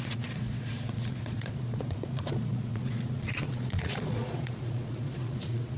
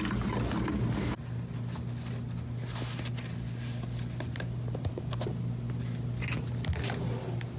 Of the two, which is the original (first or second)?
second